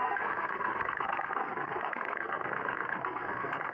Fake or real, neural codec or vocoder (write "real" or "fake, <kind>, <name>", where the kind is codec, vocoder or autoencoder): fake, codec, SNAC